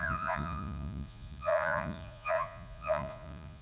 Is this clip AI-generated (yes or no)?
yes